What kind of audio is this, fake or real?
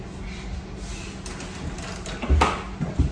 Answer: real